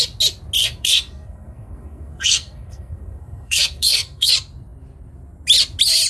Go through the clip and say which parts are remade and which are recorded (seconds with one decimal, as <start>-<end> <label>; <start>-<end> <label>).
0.0-0.6 recorded; 0.6-4.3 remade; 4.3-6.1 recorded